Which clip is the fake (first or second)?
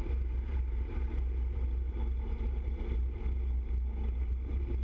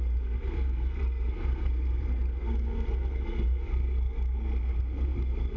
second